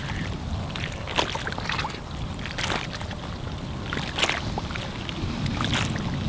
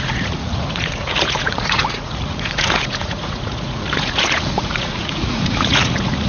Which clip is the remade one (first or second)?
second